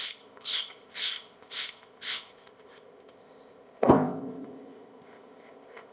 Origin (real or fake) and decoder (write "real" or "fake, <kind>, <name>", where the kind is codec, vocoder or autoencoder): fake, codec, ZipCodec